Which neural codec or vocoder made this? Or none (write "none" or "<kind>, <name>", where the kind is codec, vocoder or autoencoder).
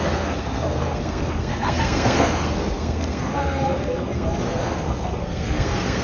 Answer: codec, SNAC